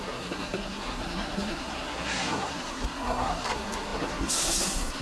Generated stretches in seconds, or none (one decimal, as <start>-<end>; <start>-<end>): 0.0-5.0